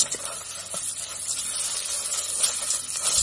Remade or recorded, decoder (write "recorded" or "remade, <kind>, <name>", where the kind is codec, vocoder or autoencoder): recorded